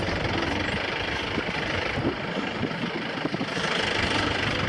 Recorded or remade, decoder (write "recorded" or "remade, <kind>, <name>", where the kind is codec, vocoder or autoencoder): remade, vocoder, BigVGAN v2